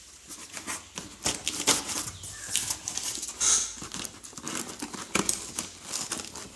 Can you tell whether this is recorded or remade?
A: recorded